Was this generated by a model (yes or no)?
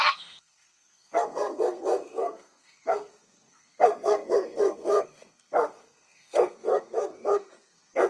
yes